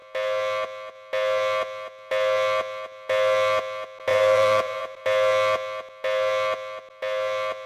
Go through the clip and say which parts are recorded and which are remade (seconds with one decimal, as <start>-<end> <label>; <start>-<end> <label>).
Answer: 0.0-4.1 recorded; 4.1-5.0 remade; 5.0-7.7 recorded